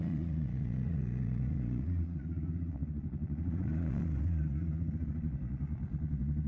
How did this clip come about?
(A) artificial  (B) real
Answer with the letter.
A